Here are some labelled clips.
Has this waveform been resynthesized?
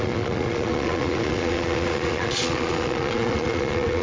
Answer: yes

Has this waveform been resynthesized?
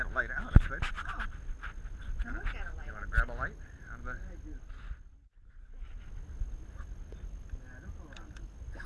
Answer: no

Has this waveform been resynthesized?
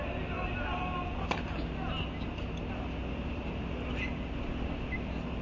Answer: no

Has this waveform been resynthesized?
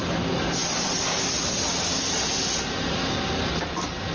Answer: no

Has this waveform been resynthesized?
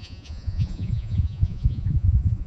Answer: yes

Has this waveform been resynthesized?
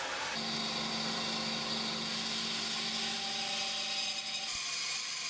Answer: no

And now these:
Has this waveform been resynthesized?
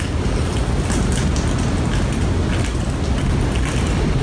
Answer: no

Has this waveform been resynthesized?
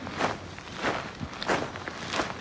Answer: no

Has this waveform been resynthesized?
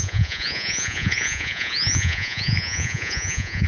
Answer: yes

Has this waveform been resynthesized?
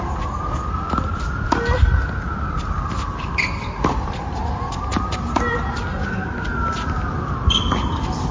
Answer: no